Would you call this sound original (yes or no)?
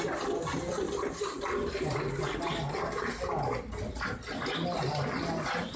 yes